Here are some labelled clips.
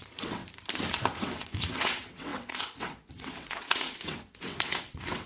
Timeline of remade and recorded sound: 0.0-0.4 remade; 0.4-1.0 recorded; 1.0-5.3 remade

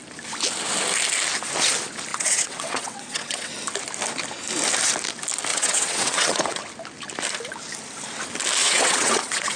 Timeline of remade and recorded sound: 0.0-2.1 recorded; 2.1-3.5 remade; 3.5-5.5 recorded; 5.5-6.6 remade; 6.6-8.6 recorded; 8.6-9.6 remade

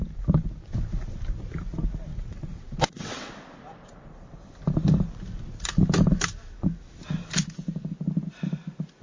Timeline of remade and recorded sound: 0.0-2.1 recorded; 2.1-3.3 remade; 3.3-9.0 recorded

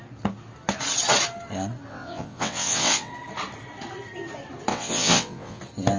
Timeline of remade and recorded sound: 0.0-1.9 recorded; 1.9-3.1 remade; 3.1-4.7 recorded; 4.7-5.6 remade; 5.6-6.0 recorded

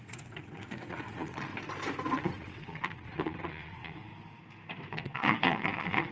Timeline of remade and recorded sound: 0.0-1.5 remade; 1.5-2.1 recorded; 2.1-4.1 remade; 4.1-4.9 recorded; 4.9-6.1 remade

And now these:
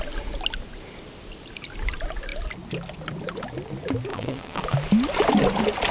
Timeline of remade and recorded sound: 0.0-4.1 recorded; 4.1-4.6 remade; 4.6-5.9 recorded